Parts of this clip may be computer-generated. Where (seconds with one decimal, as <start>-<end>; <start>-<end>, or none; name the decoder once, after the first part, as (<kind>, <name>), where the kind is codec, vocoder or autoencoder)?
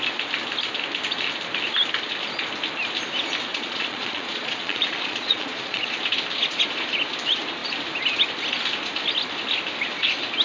3.5-5.9 (vocoder, Vocos)